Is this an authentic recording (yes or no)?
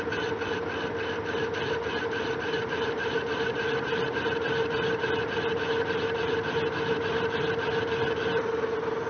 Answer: yes